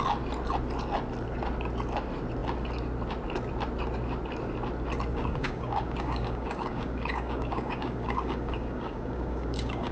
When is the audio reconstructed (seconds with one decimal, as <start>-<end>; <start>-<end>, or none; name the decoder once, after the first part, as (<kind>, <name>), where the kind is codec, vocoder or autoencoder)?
5.1-9.9 (codec, DAC)